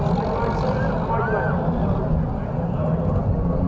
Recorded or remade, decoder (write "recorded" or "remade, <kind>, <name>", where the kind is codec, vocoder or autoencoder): recorded